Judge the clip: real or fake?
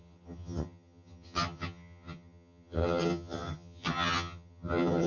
fake